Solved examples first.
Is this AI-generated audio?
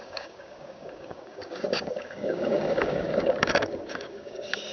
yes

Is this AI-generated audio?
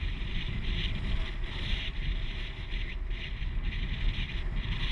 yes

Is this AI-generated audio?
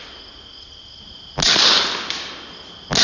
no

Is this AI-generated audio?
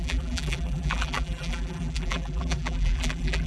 yes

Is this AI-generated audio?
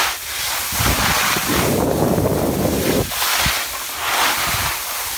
no